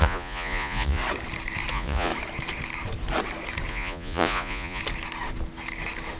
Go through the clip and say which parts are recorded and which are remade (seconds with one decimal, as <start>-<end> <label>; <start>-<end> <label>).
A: 0.0-1.0 remade; 1.0-1.7 recorded; 1.7-2.1 remade; 2.1-3.7 recorded; 3.7-4.8 remade; 4.8-6.2 recorded